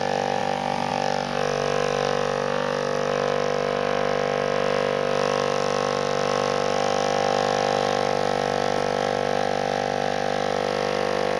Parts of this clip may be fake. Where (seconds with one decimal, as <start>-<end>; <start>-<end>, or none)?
none